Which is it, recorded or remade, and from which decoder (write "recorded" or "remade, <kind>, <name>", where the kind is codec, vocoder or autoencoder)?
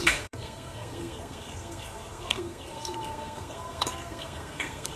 remade, codec, SNAC